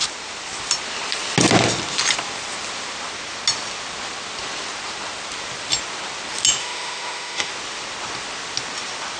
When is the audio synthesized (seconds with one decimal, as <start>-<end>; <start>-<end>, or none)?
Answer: 6.6-7.5